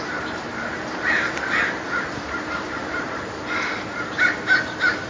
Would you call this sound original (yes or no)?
no